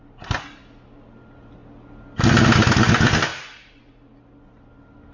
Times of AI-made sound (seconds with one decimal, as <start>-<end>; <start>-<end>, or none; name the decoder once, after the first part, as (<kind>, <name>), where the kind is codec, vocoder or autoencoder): none